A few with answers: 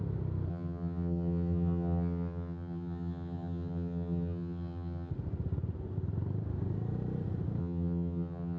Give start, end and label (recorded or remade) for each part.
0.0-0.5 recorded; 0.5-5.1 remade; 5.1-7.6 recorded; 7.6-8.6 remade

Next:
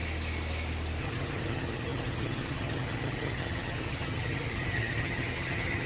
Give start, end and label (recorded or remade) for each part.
0.0-1.0 recorded; 1.0-5.9 remade

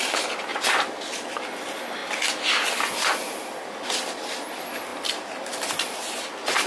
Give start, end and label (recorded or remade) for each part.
0.0-0.5 recorded; 0.5-1.0 remade; 1.0-6.7 recorded

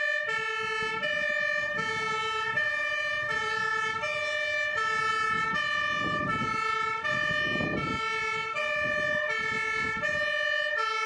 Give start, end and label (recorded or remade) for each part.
0.0-1.6 recorded; 1.6-3.5 remade; 3.5-11.1 recorded

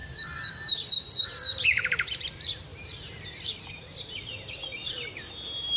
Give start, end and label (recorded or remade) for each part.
0.0-2.7 recorded; 2.7-3.7 remade; 3.7-4.8 recorded; 4.8-5.8 remade